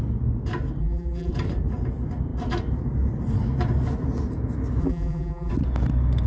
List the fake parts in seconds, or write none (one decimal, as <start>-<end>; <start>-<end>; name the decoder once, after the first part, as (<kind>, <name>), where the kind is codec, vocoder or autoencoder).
0.8-1.3 (vocoder, BigVGAN v2); 4.8-5.5